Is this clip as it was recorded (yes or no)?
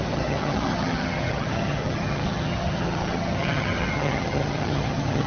no